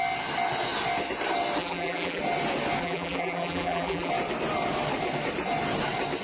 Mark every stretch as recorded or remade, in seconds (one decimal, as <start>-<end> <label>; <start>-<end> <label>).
0.0-1.6 recorded; 1.6-2.2 remade; 2.2-2.8 recorded; 2.8-4.1 remade; 4.1-6.2 recorded